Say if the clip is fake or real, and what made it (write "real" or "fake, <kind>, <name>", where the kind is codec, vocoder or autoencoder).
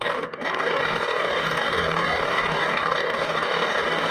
fake, codec, DAC